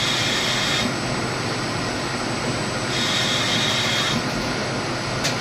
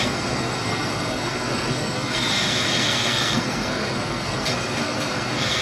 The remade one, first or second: second